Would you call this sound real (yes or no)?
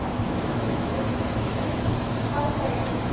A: no